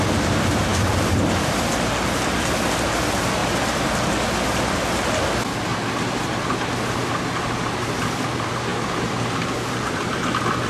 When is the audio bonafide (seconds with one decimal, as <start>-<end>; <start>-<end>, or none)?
0.0-0.7; 1.7-10.7